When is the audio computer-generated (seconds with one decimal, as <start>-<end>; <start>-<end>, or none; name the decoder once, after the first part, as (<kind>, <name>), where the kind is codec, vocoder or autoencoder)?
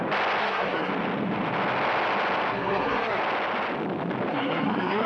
0.4-0.9 (codec, SNAC); 2.5-3.2; 4.3-5.1